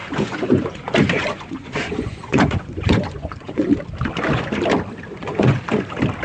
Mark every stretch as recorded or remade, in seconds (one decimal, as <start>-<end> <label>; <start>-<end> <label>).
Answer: 0.0-3.7 remade; 3.7-5.1 recorded; 5.1-5.6 remade; 5.6-6.2 recorded